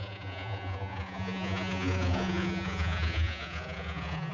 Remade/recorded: remade